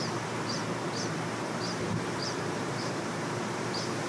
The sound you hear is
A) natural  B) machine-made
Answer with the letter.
B